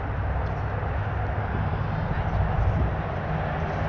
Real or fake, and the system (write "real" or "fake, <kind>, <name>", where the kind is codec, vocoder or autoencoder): real